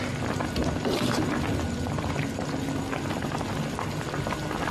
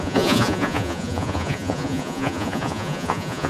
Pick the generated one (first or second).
second